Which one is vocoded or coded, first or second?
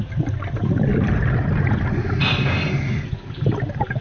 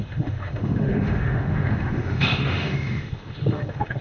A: second